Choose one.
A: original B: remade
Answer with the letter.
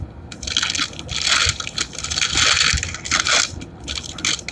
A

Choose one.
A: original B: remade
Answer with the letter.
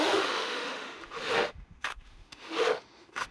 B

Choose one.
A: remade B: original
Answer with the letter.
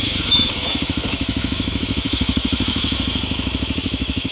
A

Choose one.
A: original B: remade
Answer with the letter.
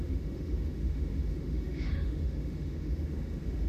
B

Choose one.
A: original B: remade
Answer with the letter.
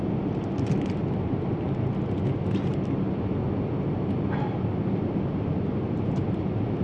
A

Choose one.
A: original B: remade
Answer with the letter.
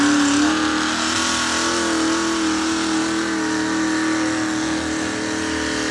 A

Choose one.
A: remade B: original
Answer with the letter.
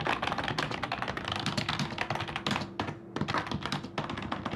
B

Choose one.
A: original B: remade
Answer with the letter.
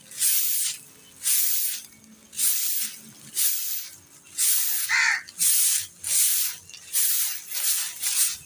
A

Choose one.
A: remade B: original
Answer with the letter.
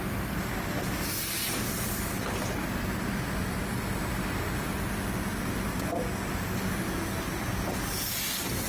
B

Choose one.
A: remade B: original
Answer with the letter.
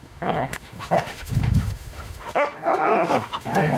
A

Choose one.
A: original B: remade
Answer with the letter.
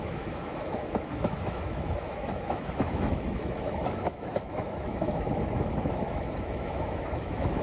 B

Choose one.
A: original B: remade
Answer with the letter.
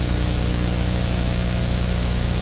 B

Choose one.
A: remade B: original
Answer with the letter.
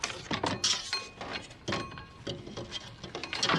B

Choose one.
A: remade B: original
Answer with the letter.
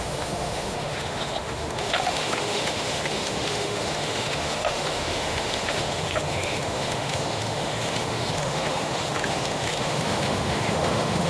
A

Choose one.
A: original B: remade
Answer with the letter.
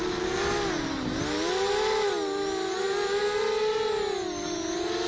A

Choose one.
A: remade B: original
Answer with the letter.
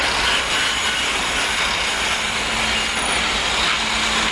B